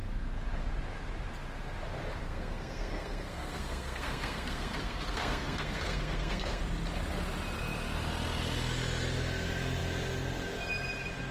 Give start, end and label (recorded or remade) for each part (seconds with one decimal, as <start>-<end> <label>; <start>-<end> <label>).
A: 0.0-2.2 recorded; 2.2-6.6 remade; 6.6-11.3 recorded